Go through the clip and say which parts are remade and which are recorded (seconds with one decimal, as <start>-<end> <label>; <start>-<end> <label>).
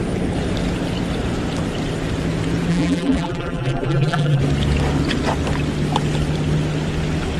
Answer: 0.0-2.7 recorded; 2.7-4.4 remade; 4.4-7.4 recorded